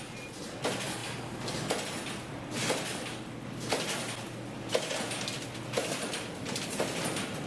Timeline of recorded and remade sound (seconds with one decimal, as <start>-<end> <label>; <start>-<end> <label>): 0.0-7.5 recorded

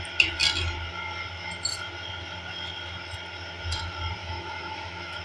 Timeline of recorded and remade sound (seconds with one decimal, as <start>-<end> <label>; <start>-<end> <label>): 0.0-4.2 recorded; 4.2-5.2 remade

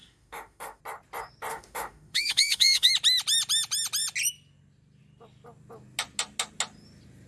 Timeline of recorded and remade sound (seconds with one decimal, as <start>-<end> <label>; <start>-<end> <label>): 0.0-0.8 remade; 0.8-1.5 recorded; 1.5-2.9 remade; 2.9-7.3 recorded

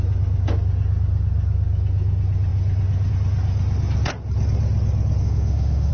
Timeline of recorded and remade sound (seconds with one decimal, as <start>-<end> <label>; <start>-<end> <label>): 0.0-5.2 recorded; 5.2-5.9 remade

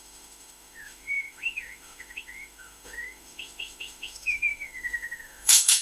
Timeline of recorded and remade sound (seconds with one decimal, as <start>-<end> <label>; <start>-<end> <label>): 0.0-5.8 remade

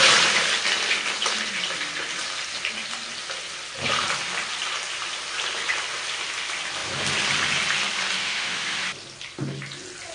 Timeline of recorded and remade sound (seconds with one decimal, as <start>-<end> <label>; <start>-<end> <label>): 0.0-8.2 recorded; 8.2-8.8 remade; 8.8-10.1 recorded